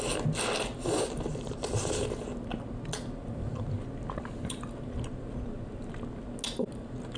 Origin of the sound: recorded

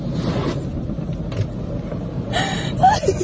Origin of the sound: recorded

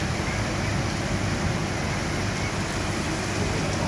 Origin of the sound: recorded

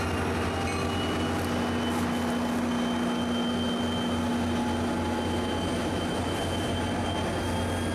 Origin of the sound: recorded